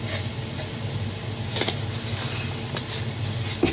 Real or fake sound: real